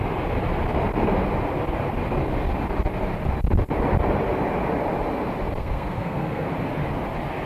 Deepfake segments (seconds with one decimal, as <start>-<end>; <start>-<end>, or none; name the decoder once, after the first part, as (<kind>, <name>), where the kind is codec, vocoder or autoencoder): 5.6-6.5 (codec, SNAC)